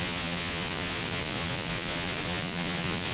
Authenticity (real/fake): fake